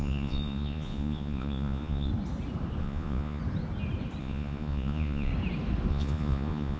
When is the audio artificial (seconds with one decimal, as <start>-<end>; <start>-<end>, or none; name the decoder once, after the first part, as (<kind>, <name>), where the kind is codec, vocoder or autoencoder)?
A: 0.0-2.1 (vocoder, Vocos); 2.8-3.4; 4.2-5.3; 5.9-6.8